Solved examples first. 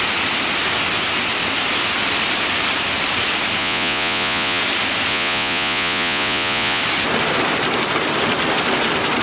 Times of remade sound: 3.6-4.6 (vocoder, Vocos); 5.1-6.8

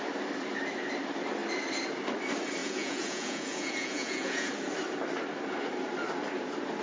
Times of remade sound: 2.6-4.5 (vocoder, Vocos)

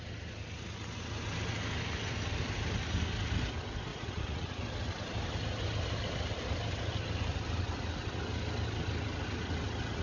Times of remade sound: 3.9-4.6 (vocoder, Vocos)

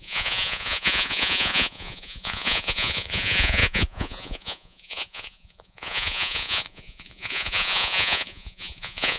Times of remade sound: 0.0-9.2 (vocoder, Vocos)

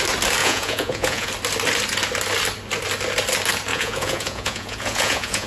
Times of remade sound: 0.4-1.3 (vocoder, Vocos); 3.7-5.5

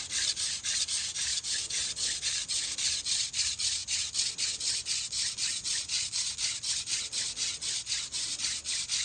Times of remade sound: 1.3-2.2 (vocoder, Vocos); 5.5-6.1

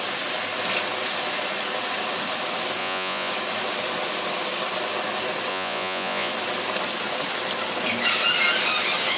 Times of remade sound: 2.8-3.3 (vocoder, Vocos); 5.5-6.3